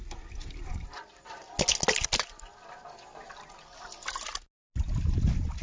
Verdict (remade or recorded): recorded